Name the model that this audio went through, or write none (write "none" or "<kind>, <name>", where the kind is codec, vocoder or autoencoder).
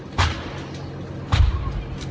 none